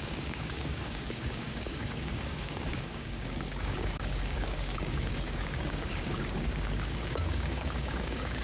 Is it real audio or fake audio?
fake